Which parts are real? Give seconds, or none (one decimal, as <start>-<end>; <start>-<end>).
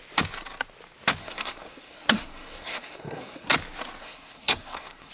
0.0-1.2; 3.5-4.0